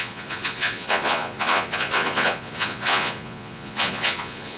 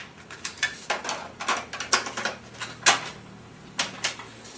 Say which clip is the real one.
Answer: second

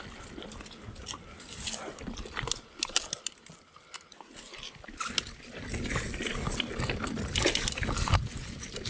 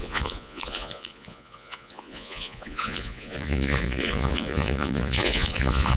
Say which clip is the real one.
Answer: first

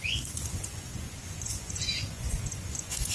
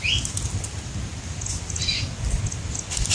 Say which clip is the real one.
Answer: second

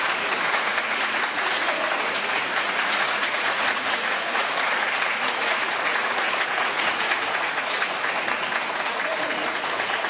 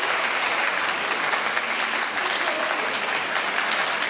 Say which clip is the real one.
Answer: second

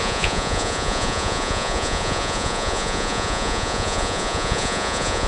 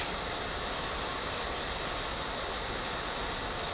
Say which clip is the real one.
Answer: second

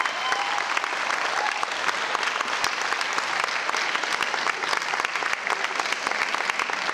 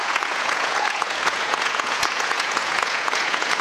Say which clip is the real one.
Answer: first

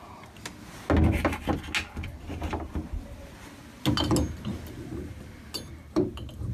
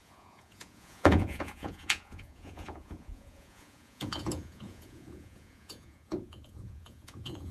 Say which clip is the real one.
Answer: first